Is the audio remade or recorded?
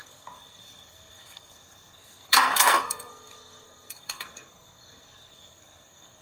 remade